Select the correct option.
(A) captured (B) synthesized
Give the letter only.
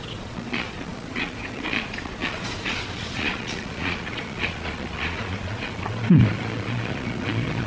B